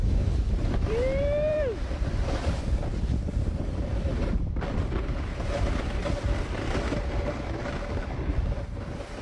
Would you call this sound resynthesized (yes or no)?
yes